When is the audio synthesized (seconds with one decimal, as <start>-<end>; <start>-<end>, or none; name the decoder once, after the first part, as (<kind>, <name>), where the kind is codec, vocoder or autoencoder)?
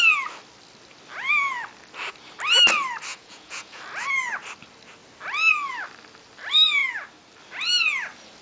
3.1-3.8 (vocoder, Vocos)